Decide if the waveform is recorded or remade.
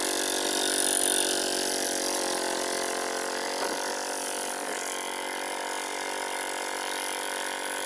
remade